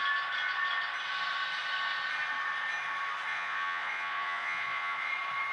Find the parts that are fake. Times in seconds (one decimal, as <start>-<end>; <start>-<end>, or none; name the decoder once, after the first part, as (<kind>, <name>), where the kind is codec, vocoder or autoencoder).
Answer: 3.3-5.1 (vocoder, Vocos)